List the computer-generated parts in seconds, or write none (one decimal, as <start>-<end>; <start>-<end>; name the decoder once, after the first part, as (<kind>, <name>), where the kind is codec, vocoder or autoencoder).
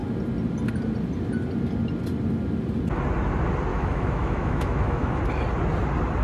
3.7-5.2 (autoencoder, DAC-VAE)